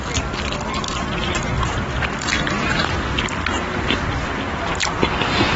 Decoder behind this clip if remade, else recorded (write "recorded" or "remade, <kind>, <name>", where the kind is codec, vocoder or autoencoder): recorded